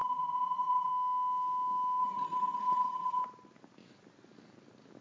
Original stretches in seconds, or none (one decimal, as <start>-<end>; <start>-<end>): 0.9-2.0; 3.2-5.0